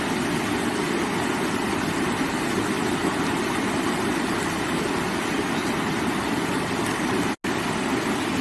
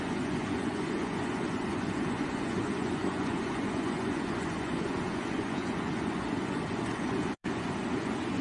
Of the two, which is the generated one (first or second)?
second